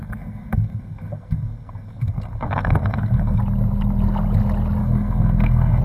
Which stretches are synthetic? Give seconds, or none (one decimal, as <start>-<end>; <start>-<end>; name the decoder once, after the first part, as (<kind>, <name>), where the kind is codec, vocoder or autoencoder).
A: 0.0-3.4 (codec, SNAC); 4.8-5.8